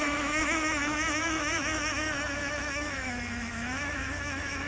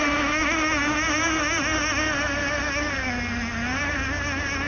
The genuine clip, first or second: second